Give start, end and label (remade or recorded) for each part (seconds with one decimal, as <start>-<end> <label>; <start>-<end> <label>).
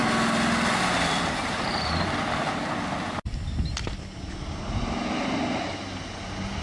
0.0-6.6 recorded